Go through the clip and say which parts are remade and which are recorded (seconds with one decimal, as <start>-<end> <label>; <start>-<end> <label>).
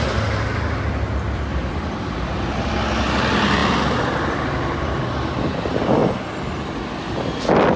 0.0-1.5 recorded; 1.5-2.7 remade; 2.7-7.8 recorded